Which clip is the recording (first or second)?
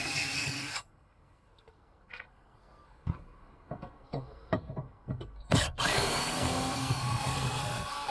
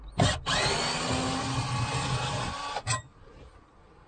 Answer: second